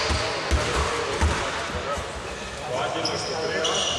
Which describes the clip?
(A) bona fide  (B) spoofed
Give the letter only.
A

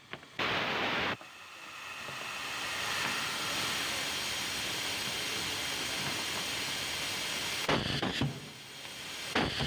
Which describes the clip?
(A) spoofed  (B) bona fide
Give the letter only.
B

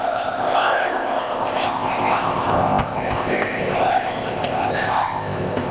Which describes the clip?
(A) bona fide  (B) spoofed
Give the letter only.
B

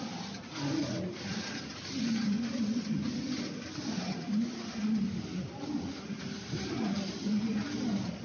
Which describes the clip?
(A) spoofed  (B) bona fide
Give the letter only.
A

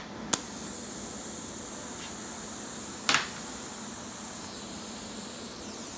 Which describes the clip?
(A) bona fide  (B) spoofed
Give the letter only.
A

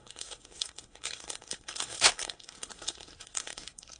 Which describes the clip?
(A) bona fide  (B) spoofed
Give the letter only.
B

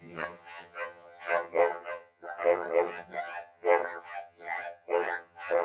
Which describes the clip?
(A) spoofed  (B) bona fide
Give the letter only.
A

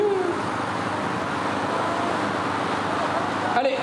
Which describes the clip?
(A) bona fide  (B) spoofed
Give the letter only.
A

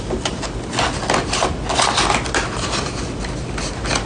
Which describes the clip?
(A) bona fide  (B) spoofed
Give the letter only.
A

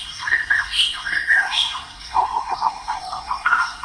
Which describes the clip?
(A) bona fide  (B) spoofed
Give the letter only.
B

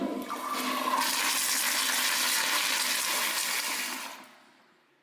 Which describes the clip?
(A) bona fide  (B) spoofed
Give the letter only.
A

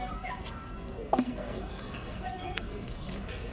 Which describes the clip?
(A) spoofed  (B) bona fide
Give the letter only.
A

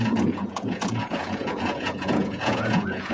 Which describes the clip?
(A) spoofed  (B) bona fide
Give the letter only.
A